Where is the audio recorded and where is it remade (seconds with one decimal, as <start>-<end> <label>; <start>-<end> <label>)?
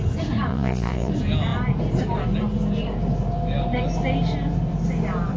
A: 0.0-0.5 recorded; 0.5-1.1 remade; 1.1-5.4 recorded